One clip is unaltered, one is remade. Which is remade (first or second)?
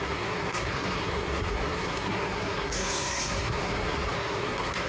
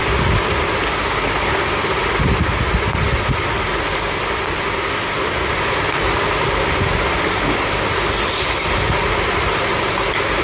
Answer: first